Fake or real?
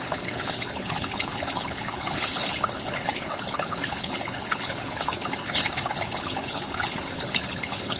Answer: fake